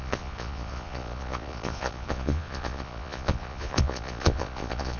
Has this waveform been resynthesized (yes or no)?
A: yes